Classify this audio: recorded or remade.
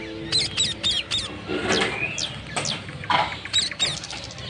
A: recorded